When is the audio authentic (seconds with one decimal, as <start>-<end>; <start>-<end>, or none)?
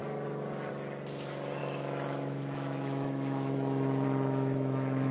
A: 0.0-1.6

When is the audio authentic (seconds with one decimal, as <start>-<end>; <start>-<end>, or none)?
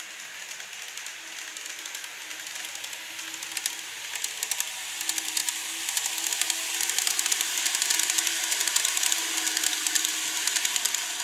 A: 0.0-11.2